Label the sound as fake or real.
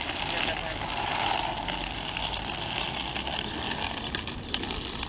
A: real